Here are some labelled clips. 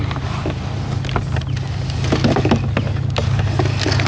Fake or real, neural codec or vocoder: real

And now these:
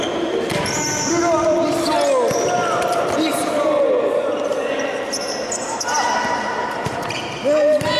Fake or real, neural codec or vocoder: real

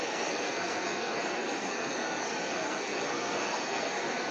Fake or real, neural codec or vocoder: fake, codec, SNAC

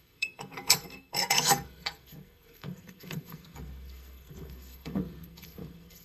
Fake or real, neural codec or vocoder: fake, codec, SNAC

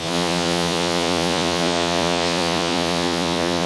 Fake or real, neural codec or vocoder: fake, vocoder, Vocos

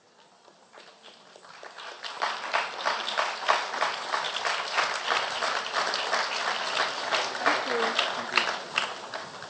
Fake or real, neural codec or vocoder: real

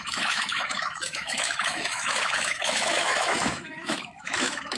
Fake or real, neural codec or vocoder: fake, autoencoder, DAC-VAE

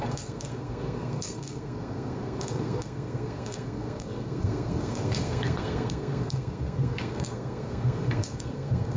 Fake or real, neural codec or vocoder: fake, codec, SNAC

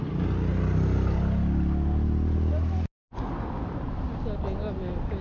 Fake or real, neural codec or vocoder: real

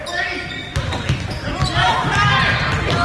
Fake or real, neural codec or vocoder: real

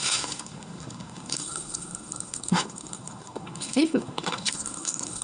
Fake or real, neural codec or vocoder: fake, codec, SNAC